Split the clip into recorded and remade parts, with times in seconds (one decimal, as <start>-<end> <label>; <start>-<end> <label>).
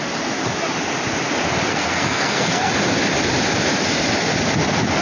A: 0.0-1.7 recorded; 1.7-2.7 remade; 2.7-5.0 recorded